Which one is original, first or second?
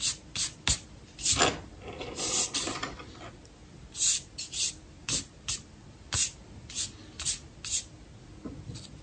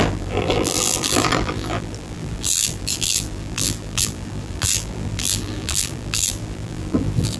first